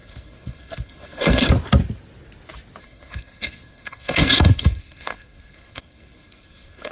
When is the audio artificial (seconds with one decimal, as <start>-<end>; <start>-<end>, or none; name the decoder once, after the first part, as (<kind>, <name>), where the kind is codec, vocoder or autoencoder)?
0.0-1.5 (codec, SNAC); 2.8-6.9